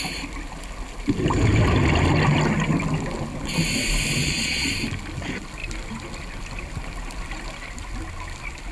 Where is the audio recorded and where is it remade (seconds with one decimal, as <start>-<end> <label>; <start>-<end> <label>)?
0.0-4.2 recorded; 4.2-4.7 remade; 4.7-8.7 recorded